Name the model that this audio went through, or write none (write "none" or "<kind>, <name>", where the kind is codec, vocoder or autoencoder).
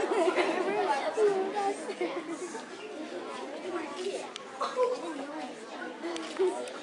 none